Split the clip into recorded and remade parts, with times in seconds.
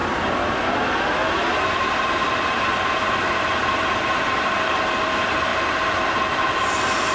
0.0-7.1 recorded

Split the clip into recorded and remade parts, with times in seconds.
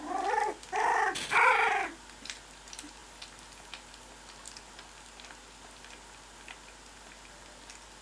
0.0-8.0 recorded